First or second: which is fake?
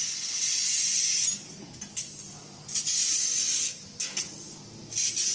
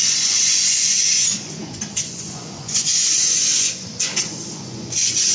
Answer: second